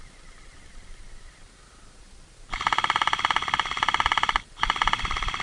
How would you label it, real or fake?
fake